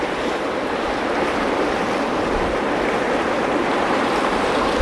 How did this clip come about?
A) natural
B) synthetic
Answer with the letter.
B